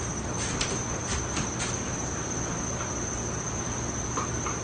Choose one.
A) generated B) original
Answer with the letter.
A